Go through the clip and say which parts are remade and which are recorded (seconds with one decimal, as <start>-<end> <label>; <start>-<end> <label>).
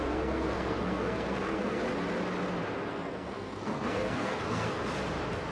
0.0-1.8 remade; 1.8-2.9 recorded; 2.9-4.8 remade; 4.8-5.5 recorded